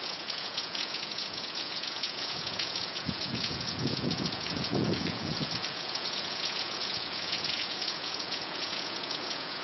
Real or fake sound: fake